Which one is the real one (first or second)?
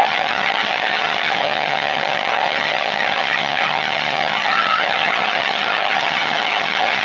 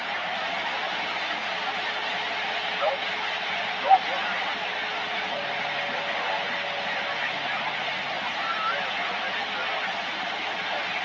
second